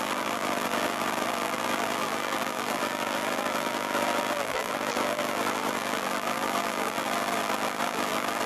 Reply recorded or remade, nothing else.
remade